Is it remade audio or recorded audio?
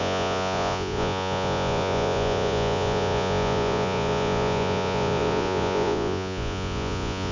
remade